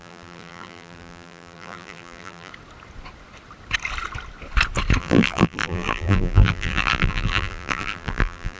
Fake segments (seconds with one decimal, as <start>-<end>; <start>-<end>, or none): 0.0-2.5; 5.0-8.6